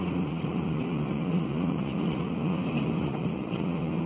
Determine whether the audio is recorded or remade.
remade